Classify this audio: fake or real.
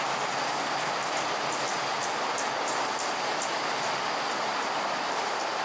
real